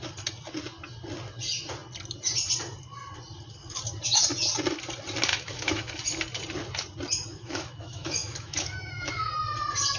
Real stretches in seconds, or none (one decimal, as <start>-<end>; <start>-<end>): 0.0-5.3; 5.9-7.3; 9.3-10.0